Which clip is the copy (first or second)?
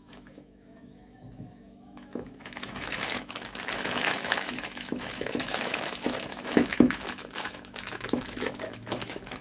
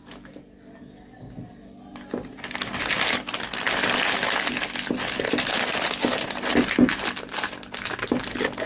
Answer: first